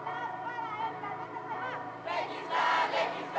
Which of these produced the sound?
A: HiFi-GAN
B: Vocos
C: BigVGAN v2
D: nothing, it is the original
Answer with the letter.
C